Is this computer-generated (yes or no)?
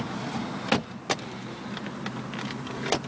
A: no